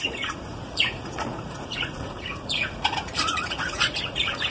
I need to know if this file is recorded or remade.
remade